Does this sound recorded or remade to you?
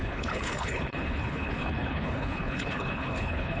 remade